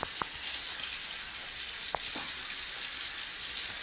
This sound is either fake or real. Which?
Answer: real